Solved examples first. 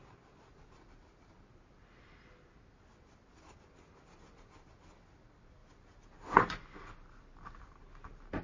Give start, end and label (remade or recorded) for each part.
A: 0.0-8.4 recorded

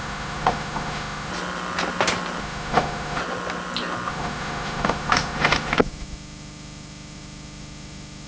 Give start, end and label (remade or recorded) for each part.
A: 0.0-1.3 remade; 1.3-2.4 recorded; 2.4-3.2 remade; 3.2-4.1 recorded; 4.1-8.3 remade

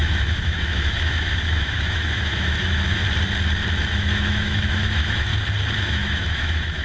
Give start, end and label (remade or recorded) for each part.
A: 0.0-3.0 remade; 3.0-3.9 recorded; 3.9-5.3 remade; 5.3-5.8 recorded; 5.8-6.8 remade

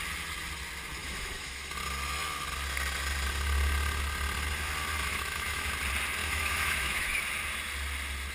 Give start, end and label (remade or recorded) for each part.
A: 0.0-1.0 recorded; 1.0-1.7 remade; 1.7-5.1 recorded; 5.1-5.7 remade; 5.7-6.2 recorded; 6.2-7.2 remade; 7.2-8.3 recorded

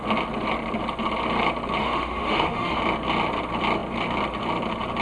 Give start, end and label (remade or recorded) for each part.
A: 0.0-1.8 recorded; 1.8-2.8 remade; 2.8-5.0 recorded

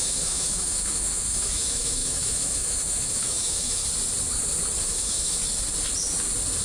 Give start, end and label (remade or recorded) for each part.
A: 0.0-3.8 remade; 3.8-4.8 recorded; 4.8-5.4 remade; 5.4-6.6 recorded

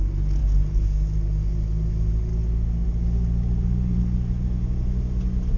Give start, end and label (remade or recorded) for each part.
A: 0.0-5.6 recorded

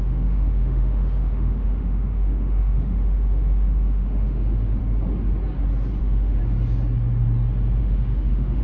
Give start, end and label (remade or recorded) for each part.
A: 0.0-4.8 remade; 4.8-6.0 recorded; 6.0-6.4 remade; 6.4-7.8 recorded; 7.8-8.6 remade